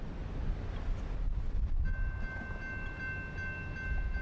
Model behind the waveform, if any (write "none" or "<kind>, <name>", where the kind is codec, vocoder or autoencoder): none